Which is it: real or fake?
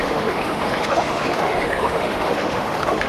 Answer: fake